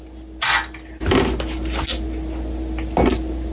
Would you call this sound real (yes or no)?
yes